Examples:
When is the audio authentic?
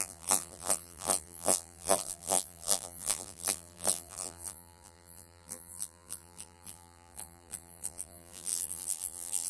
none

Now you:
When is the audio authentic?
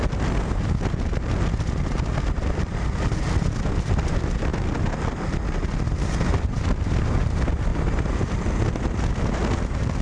0.0-7.7; 8.4-10.0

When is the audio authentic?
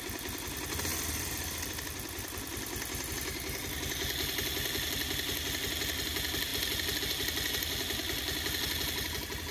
0.0-9.5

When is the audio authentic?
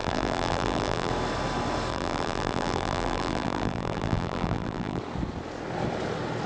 1.1-1.9; 5.0-6.5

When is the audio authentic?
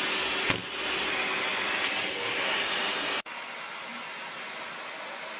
0.0-5.4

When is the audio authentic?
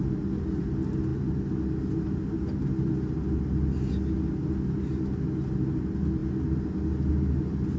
0.0-7.8